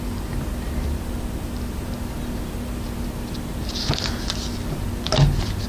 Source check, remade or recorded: recorded